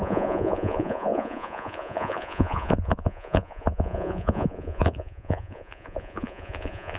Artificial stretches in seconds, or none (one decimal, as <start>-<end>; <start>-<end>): 0.0-7.0

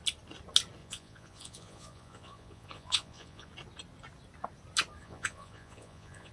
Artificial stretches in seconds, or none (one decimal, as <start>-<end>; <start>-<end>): 0.8-3.5; 5.0-6.3

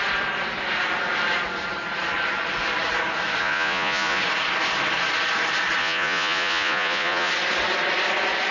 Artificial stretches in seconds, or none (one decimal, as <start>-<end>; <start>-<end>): 3.4-4.2; 5.8-7.3

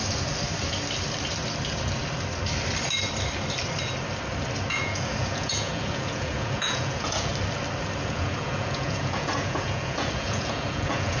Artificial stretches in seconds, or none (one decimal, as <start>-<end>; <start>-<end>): 4.7-7.3; 8.0-11.2

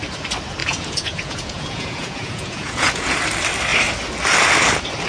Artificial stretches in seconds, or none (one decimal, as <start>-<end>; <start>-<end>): 0.6-3.2

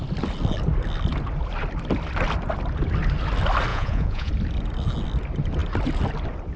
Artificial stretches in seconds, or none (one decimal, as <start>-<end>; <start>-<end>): 3.7-4.3

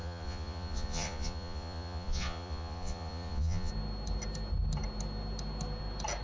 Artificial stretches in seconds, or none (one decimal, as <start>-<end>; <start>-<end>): 0.0-3.7